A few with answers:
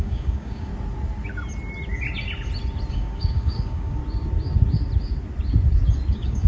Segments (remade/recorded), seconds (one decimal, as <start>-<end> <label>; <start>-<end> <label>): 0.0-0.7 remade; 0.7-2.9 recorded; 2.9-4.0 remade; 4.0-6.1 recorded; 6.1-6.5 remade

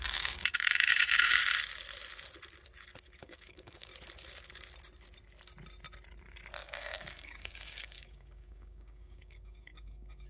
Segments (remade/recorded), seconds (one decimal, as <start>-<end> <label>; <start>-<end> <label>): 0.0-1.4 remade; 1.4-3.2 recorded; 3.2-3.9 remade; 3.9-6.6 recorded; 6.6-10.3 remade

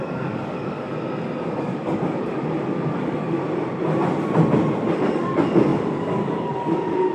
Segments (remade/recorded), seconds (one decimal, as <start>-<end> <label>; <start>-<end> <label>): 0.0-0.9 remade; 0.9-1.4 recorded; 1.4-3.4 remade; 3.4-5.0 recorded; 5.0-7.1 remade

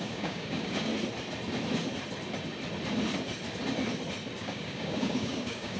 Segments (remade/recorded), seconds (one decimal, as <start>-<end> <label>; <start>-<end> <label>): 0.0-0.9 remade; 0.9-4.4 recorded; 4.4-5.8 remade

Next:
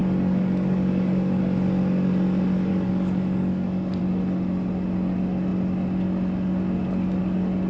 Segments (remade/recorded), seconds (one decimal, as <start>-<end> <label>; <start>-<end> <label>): 0.0-1.4 remade; 1.4-2.7 recorded; 2.7-4.0 remade; 4.0-7.7 recorded

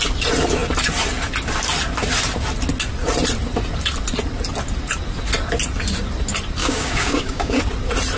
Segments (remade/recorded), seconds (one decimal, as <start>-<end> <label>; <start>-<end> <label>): 0.0-6.6 recorded; 6.6-7.6 remade; 7.6-8.2 recorded